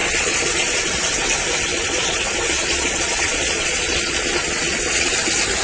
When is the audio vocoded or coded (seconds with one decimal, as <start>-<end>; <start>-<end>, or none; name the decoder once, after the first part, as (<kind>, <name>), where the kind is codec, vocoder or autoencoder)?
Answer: 0.0-0.8 (vocoder, Vocos); 1.7-5.1